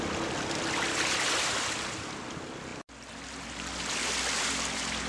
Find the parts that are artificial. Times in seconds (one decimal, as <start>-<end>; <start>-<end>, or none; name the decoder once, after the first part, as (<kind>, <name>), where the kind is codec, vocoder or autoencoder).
none